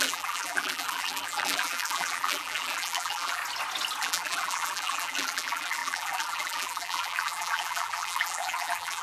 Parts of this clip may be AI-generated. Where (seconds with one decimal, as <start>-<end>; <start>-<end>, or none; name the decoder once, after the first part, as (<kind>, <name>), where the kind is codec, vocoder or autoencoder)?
0.0-3.4 (vocoder, BigVGAN v2); 4.0-9.0